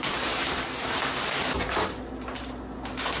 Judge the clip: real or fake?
real